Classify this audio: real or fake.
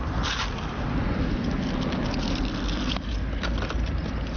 real